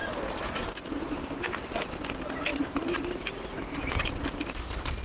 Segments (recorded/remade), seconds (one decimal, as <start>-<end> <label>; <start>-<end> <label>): 0.0-5.0 recorded